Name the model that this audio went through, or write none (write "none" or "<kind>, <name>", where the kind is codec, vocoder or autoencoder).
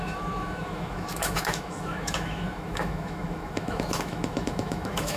autoencoder, DAC-VAE